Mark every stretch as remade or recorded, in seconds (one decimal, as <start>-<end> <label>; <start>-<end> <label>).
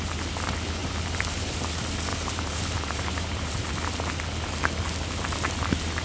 0.0-0.8 recorded; 0.8-1.6 remade; 1.6-2.1 recorded; 2.1-3.7 remade; 3.7-6.0 recorded